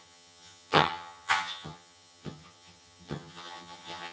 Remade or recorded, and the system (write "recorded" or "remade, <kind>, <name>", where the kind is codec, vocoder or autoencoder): remade, vocoder, HiFi-GAN